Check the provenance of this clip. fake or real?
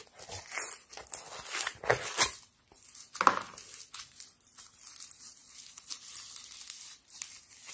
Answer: real